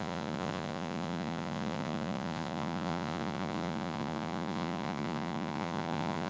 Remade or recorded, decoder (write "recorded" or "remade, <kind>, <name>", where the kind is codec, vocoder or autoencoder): remade, vocoder, Vocos